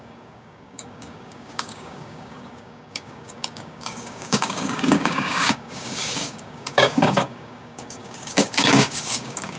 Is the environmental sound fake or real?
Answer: fake